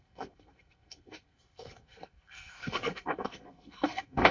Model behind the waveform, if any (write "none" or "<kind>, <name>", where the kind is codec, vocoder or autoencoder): codec, SNAC